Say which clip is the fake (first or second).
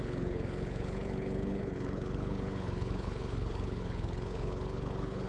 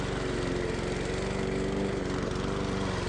first